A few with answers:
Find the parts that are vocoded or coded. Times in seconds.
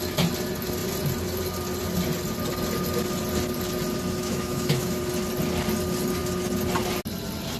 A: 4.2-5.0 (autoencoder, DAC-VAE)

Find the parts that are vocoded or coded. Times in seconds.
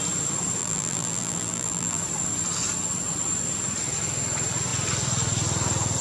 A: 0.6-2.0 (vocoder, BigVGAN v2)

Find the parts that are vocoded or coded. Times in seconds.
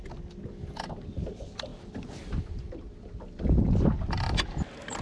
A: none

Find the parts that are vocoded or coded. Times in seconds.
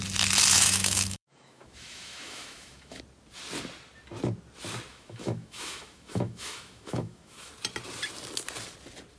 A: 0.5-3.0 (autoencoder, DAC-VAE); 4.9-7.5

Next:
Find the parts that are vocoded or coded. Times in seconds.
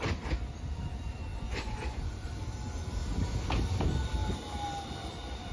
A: 1.3-2.3 (vocoder, Vocos)